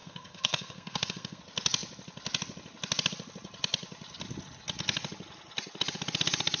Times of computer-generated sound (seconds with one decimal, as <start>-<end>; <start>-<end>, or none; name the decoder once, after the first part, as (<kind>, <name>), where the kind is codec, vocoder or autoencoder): 0.0-1.4 (codec, SNAC)